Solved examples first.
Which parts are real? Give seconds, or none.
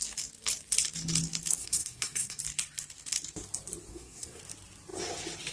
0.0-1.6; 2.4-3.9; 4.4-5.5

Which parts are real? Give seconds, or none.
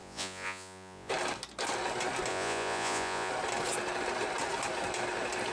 1.1-2.3; 3.3-5.5